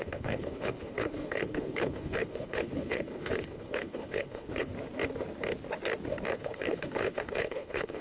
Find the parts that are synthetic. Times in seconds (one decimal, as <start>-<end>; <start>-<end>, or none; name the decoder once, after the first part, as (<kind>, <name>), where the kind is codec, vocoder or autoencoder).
0.0-4.7 (codec, HILCodec); 6.3-8.0